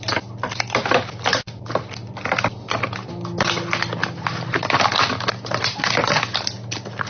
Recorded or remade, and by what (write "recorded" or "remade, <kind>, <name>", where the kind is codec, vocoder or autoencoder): recorded